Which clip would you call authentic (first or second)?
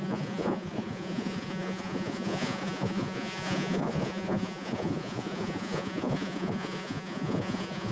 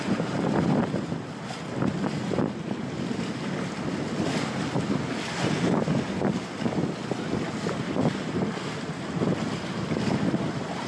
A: second